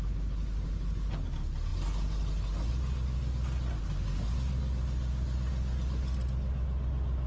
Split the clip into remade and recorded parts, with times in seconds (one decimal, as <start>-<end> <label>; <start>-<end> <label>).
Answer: 0.0-7.3 recorded